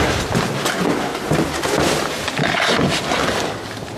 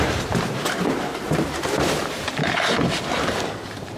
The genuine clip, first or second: first